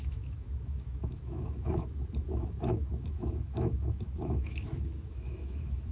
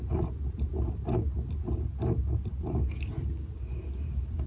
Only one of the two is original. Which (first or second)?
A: second